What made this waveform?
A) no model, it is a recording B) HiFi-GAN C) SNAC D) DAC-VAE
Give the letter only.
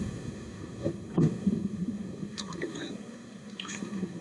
C